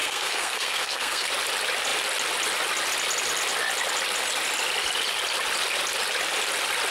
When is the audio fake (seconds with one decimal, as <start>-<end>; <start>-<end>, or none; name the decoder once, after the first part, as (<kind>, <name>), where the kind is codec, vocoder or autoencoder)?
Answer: 0.0-1.3 (codec, SNAC)